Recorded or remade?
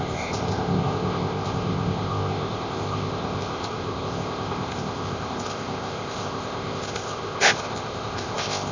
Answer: remade